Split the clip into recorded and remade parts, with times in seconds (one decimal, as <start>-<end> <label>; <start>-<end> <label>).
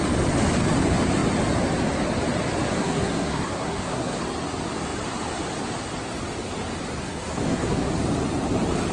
0.0-2.8 recorded; 2.8-4.2 remade; 4.2-7.0 recorded; 7.0-7.9 remade; 7.9-8.9 recorded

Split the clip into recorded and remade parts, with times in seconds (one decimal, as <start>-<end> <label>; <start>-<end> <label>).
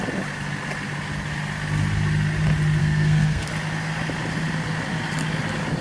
0.0-2.8 recorded; 2.8-3.5 remade; 3.5-5.8 recorded